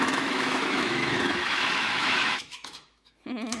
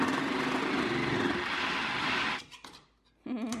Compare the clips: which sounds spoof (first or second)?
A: first